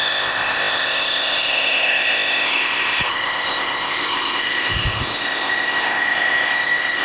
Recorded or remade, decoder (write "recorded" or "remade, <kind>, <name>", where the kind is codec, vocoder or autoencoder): remade, codec, ZipCodec